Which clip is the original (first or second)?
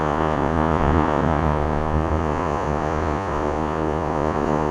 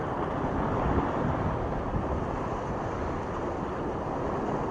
second